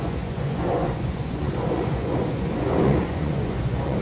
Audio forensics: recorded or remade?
remade